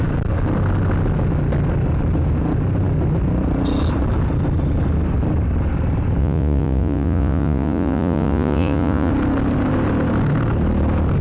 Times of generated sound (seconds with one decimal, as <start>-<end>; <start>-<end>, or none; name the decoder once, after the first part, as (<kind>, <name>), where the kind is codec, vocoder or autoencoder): 6.2-9.1 (vocoder, Vocos)